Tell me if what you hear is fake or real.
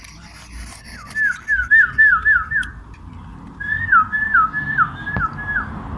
real